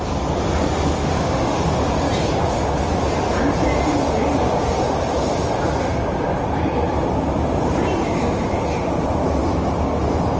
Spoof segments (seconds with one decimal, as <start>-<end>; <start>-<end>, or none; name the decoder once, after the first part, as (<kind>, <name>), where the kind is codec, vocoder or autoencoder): 1.0-1.6 (autoencoder, DAC-VAE)